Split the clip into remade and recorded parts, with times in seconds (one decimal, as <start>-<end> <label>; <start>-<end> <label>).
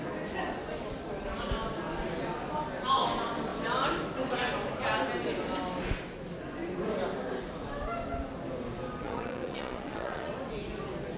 0.0-9.0 recorded; 9.0-10.3 remade; 10.3-11.2 recorded